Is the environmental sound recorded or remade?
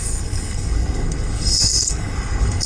remade